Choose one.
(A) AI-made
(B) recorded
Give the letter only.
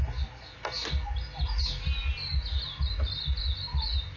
B